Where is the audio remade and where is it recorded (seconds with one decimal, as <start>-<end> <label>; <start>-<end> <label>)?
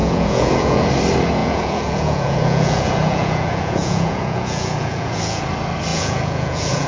0.0-0.9 remade; 0.9-1.4 recorded; 1.4-5.4 remade; 5.4-5.9 recorded; 5.9-6.9 remade